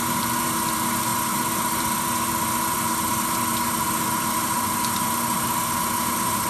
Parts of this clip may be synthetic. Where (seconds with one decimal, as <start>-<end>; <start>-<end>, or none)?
0.0-6.5